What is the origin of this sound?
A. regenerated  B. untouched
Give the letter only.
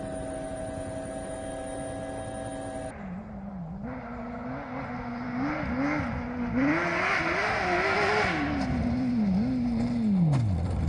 B